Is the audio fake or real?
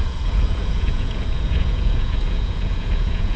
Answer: fake